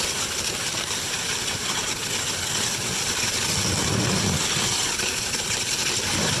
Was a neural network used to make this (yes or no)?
no